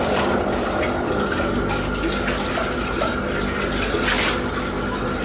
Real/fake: real